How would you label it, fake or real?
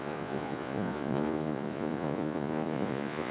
fake